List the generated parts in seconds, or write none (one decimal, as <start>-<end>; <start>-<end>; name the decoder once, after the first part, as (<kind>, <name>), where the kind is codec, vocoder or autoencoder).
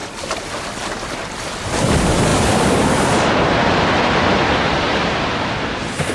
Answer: none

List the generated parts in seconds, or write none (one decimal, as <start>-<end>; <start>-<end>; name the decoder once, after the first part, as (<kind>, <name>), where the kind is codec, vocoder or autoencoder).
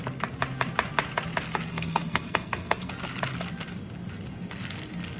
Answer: 1.7-2.9 (codec, SNAC)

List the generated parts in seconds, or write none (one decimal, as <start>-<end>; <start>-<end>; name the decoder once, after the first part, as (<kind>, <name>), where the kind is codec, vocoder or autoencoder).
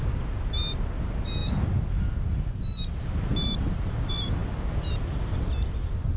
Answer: none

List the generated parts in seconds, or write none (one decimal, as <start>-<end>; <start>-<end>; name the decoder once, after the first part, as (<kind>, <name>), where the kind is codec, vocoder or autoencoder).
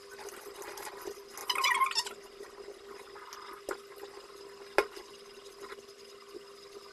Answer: none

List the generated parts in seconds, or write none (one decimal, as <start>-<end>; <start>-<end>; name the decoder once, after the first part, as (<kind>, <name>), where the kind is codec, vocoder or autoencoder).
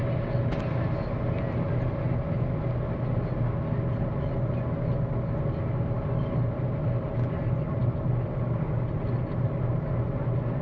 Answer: none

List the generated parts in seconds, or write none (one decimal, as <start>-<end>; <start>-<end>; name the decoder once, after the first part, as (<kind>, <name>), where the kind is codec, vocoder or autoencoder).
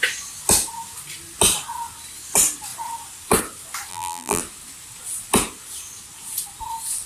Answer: 3.9-4.4 (vocoder, BigVGAN v2)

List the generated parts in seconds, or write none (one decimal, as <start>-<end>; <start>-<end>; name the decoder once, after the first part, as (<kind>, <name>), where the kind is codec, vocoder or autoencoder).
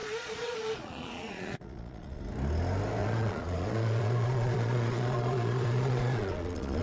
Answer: 0.0-2.2 (vocoder, Vocos); 3.0-6.8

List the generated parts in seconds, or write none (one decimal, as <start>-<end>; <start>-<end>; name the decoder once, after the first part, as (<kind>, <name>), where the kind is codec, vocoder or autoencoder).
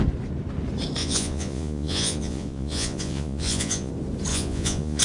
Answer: 1.0-3.9 (vocoder, Vocos); 4.3-5.0